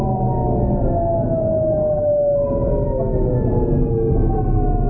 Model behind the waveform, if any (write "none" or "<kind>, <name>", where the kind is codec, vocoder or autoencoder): none